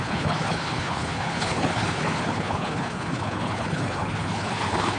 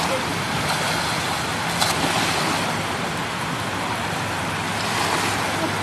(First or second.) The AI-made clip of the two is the first